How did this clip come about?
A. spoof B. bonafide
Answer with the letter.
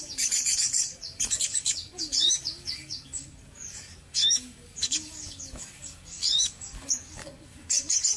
A